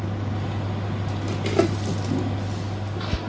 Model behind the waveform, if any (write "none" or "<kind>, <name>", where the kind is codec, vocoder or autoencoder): none